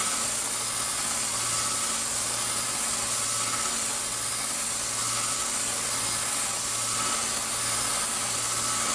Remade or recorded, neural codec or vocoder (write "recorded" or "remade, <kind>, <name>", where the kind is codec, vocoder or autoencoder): recorded